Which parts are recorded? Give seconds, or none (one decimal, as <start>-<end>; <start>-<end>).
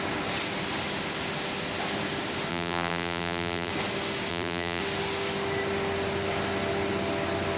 0.0-2.5; 3.7-4.3; 4.8-7.6